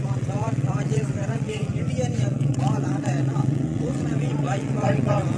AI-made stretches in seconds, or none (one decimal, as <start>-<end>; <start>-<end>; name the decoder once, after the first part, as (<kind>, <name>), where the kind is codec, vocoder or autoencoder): 0.0-1.7 (vocoder, WaveNeXt); 2.2-5.4